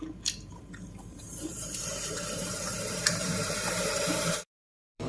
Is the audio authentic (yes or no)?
no